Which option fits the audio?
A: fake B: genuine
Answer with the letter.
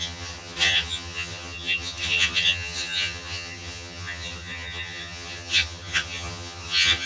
A